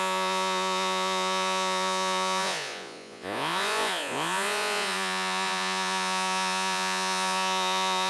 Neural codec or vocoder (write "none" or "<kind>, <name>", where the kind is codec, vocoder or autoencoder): vocoder, Vocos